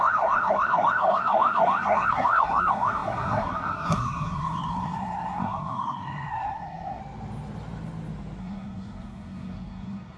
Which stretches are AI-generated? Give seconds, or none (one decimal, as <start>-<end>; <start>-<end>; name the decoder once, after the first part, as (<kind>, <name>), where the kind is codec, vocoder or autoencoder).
0.0-7.0 (codec, SNAC); 8.4-10.2